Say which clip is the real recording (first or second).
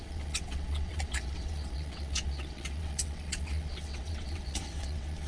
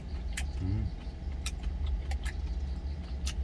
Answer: second